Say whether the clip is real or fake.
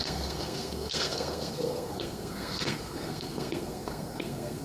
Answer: fake